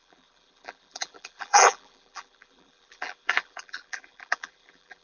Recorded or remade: remade